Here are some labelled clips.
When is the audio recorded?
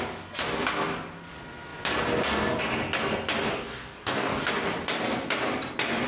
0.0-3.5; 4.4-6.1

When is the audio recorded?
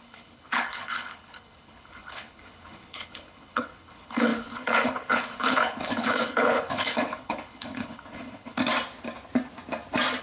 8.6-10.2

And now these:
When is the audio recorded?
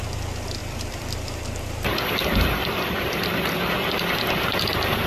0.0-0.6; 3.7-5.1